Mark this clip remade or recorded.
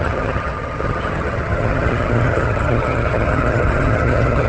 remade